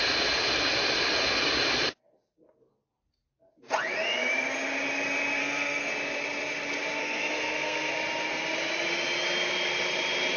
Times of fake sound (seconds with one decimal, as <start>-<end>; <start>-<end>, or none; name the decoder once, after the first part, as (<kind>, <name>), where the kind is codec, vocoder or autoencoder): 5.4-5.9 (codec, SNAC); 7.0-7.9